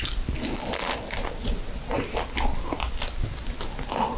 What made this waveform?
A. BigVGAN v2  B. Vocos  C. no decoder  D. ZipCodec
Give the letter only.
C